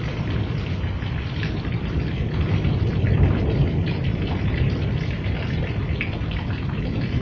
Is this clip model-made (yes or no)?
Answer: no